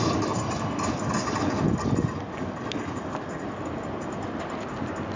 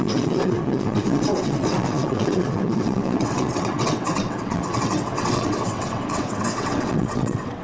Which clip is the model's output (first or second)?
second